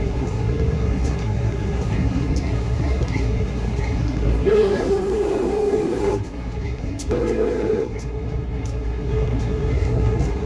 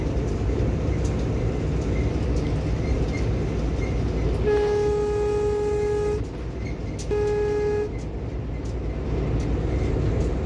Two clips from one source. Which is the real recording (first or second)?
second